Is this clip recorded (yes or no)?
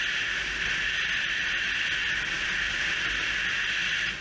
yes